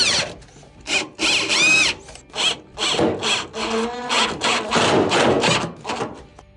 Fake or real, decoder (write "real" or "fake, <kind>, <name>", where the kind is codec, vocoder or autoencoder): real